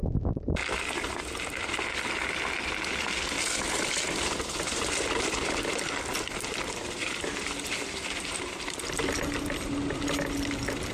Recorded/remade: recorded